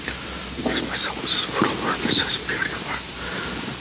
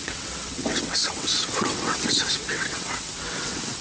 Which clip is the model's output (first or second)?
second